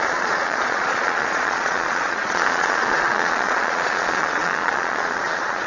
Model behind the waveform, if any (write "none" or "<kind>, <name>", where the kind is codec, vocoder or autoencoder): vocoder, Vocos